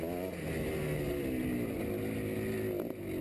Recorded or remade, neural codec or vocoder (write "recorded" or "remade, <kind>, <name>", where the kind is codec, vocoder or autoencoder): recorded